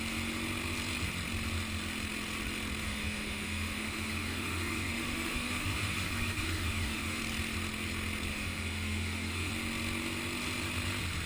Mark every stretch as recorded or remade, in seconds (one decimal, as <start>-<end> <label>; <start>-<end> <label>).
0.0-2.8 recorded; 2.8-7.2 remade; 7.2-8.3 recorded; 8.3-9.5 remade; 9.5-11.3 recorded